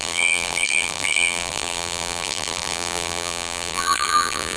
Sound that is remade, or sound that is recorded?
remade